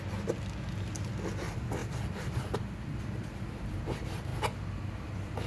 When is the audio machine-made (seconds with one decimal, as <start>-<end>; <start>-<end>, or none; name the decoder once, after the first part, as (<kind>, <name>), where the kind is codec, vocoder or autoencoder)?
1.8-3.7 (vocoder, BigVGAN v2)